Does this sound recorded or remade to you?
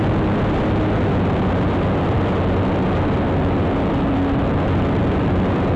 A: recorded